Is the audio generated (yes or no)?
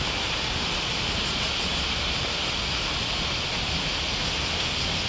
no